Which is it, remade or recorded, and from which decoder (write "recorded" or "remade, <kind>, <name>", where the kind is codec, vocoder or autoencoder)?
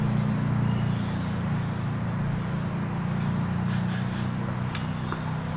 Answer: recorded